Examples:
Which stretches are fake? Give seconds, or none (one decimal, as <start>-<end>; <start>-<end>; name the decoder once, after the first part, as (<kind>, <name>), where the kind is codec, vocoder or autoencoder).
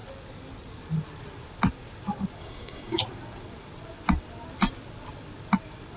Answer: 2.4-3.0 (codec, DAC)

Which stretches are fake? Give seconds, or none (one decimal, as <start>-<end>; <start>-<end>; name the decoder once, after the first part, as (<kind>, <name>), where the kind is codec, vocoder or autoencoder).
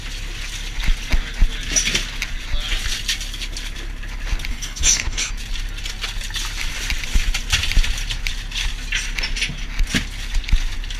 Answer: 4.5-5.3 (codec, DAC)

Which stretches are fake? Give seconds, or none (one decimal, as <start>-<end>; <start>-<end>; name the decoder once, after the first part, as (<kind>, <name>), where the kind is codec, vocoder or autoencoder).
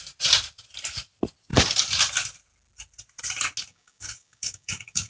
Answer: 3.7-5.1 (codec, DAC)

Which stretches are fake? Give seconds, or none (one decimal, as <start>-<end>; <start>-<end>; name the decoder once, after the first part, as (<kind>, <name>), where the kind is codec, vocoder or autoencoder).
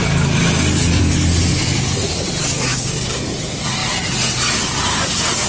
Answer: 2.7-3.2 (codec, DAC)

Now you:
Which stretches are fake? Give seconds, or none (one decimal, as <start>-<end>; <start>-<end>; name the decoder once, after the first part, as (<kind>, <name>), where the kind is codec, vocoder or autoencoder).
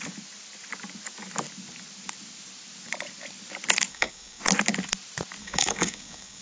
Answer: 3.9-4.4 (codec, DAC); 5.4-6.4